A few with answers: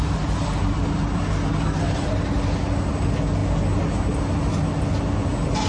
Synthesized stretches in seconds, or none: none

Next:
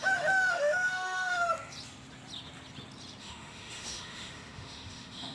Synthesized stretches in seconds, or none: 0.0-1.5 (autoencoder, DAC-VAE); 3.2-5.3

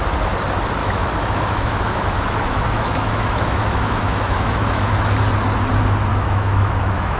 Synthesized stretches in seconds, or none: 0.8-5.1 (autoencoder, DAC-VAE); 6.1-7.2

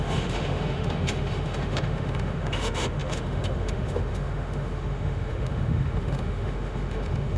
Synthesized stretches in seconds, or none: 0.0-7.4 (autoencoder, DAC-VAE)

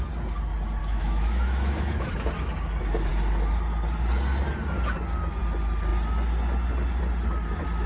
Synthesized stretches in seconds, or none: 0.8-2.1 (autoencoder, DAC-VAE)

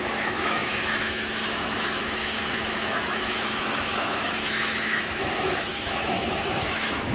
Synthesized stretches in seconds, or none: 0.0-7.1 (autoencoder, DAC-VAE)

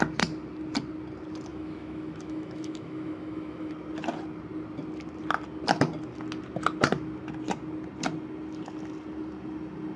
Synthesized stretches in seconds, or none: 1.5-3.7 (autoencoder, DAC-VAE)

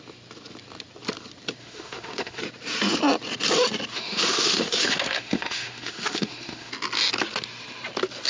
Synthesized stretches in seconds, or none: 1.6-2.4 (autoencoder, DAC-VAE); 3.9-6.7